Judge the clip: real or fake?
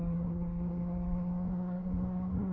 fake